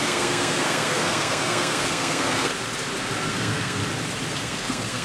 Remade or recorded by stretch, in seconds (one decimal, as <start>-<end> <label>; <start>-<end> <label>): 0.0-2.5 remade; 2.5-3.3 recorded; 3.3-3.8 remade; 3.8-4.3 recorded; 4.3-5.0 remade